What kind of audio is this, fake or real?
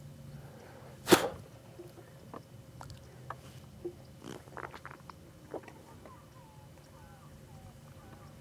real